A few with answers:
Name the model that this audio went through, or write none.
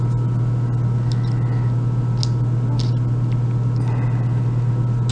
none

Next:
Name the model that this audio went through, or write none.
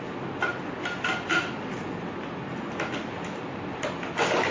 none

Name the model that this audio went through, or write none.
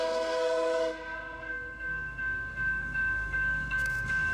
codec, SNAC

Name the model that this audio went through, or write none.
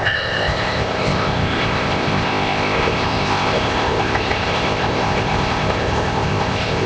codec, ZipCodec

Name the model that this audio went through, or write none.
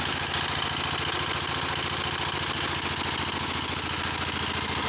none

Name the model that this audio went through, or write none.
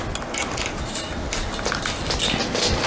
none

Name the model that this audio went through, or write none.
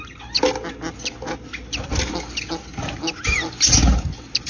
none